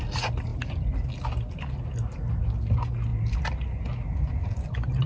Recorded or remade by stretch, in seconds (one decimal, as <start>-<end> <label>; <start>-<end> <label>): 0.0-5.1 recorded